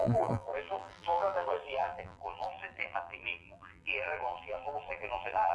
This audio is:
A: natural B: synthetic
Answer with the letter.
B